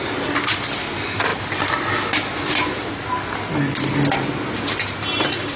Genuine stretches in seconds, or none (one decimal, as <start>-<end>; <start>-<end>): 0.0-5.6